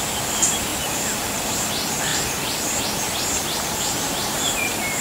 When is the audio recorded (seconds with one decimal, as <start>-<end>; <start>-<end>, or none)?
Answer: 2.1-3.6